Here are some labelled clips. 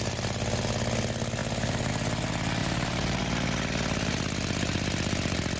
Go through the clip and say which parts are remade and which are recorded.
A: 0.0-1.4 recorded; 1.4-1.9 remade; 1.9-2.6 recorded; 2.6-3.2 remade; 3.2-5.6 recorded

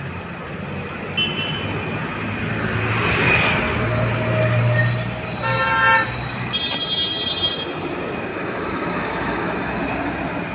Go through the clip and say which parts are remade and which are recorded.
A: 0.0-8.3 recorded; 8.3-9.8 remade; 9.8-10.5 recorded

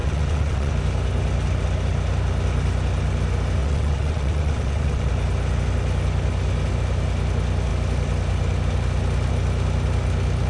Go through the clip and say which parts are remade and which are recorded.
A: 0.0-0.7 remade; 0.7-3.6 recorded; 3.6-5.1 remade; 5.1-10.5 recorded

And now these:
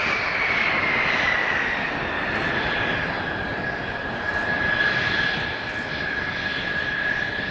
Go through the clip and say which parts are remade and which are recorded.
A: 0.0-7.5 recorded

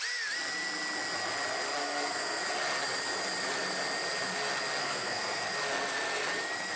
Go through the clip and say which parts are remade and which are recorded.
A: 0.0-1.8 recorded; 1.8-2.4 remade; 2.4-4.8 recorded; 4.8-5.4 remade; 5.4-6.8 recorded

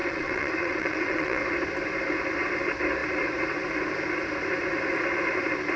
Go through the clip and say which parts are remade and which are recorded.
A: 0.0-1.4 remade; 1.4-5.8 recorded